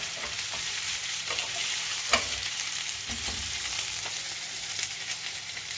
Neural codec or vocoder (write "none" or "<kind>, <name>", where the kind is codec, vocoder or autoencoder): vocoder, BigVGAN v2